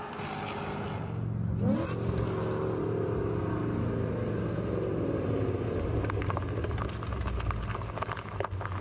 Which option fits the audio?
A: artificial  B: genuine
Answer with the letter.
B